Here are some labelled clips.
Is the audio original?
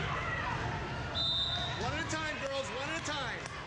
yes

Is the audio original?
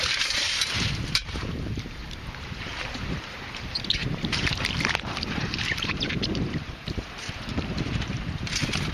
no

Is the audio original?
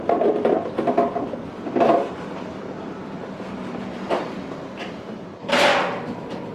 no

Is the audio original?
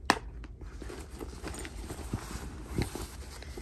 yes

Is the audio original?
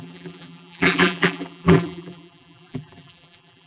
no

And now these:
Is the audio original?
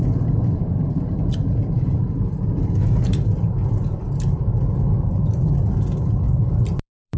no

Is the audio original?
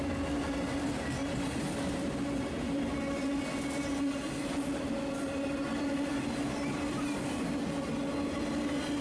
yes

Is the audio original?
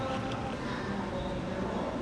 yes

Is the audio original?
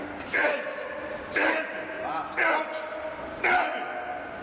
yes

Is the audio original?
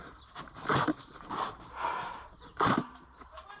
no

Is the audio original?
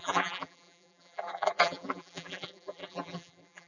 no